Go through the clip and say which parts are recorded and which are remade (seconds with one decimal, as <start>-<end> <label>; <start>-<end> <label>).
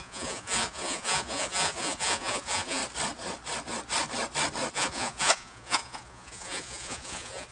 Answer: 0.0-2.8 remade; 2.8-4.7 recorded; 4.7-7.5 remade